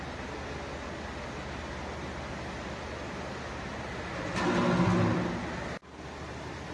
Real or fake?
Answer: real